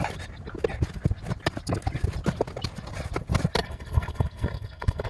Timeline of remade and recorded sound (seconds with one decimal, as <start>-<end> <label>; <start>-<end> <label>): 0.0-3.6 recorded; 3.6-5.1 remade

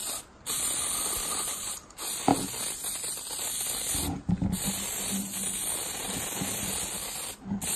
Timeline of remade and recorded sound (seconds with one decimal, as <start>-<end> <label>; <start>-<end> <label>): 0.0-7.8 recorded

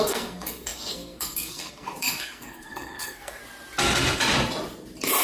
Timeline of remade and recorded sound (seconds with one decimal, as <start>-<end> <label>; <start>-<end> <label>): 0.0-3.4 remade; 3.4-5.2 recorded

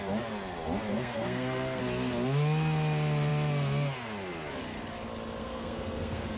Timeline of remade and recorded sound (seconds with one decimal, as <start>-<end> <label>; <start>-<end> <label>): 0.0-0.9 recorded; 0.9-1.8 remade; 1.8-5.4 recorded; 5.4-6.4 remade

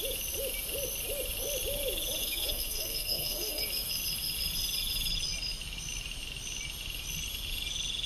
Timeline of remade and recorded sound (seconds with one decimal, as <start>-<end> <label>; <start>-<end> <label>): 0.0-2.2 recorded; 2.2-3.6 remade; 3.6-8.1 recorded